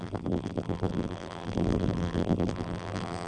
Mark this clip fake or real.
fake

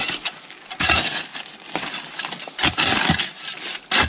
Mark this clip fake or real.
real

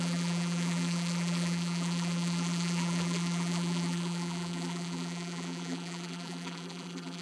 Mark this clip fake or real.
fake